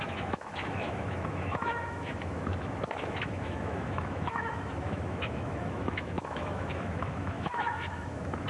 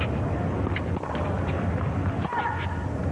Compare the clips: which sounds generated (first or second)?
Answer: first